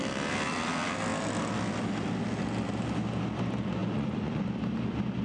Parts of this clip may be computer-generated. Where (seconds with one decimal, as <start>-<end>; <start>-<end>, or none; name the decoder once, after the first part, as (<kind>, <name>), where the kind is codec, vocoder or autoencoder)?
3.8-4.4 (vocoder, Vocos)